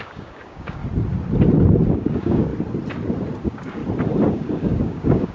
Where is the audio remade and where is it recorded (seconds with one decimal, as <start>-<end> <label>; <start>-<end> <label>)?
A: 0.0-0.8 remade; 0.8-1.9 recorded; 1.9-2.5 remade; 2.5-3.4 recorded; 3.4-3.8 remade; 3.8-4.3 recorded; 4.3-5.3 remade

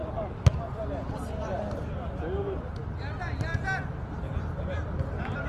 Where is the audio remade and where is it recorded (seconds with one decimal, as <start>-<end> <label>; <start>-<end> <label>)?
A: 0.0-5.5 recorded

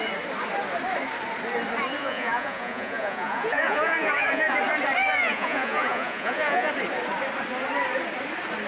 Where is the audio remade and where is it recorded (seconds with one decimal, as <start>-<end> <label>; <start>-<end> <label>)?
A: 0.0-2.0 recorded; 2.0-4.6 remade; 4.6-5.0 recorded; 5.0-6.7 remade; 6.7-8.7 recorded

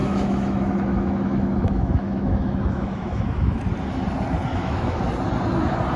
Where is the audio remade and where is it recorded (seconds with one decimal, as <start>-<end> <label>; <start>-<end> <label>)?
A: 0.0-3.6 remade; 3.6-4.5 recorded; 4.5-5.0 remade; 5.0-6.0 recorded